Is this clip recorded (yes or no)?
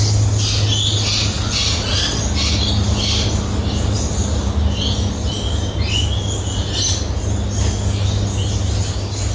yes